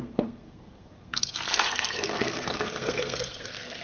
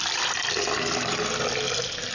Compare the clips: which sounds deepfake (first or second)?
first